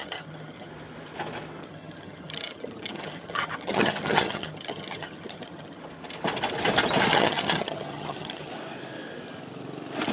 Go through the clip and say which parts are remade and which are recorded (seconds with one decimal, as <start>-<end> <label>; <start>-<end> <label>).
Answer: 0.0-0.7 remade; 0.7-1.6 recorded; 1.6-5.8 remade; 5.8-7.1 recorded; 7.1-8.5 remade; 8.5-10.1 recorded